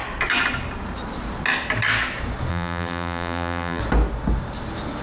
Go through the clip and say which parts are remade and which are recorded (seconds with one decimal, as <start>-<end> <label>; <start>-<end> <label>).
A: 0.0-2.5 recorded; 2.5-3.8 remade; 3.8-5.0 recorded